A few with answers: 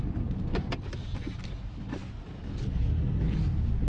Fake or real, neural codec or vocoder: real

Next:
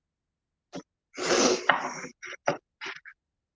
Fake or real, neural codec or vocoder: real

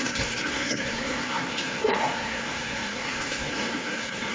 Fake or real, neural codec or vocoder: fake, codec, SNAC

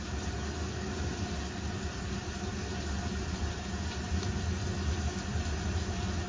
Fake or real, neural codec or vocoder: real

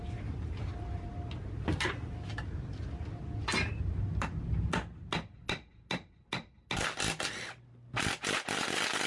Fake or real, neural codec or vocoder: real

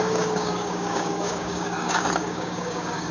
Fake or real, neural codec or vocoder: fake, codec, DAC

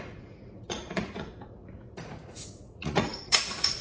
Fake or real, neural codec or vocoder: fake, vocoder, Vocos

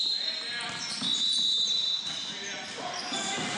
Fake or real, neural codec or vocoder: real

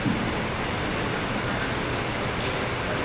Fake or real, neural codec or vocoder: real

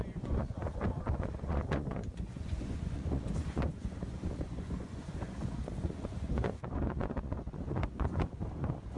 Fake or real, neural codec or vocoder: fake, vocoder, Vocos